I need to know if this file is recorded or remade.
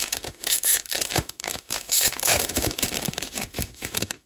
remade